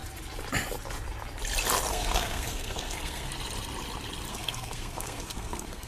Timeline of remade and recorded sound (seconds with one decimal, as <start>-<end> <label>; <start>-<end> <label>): 0.0-1.9 recorded; 1.9-3.3 remade; 3.3-4.3 recorded; 4.3-5.9 remade